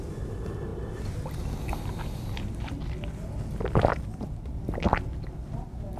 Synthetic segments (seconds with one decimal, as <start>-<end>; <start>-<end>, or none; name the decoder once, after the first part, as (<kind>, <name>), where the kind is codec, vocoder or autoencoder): none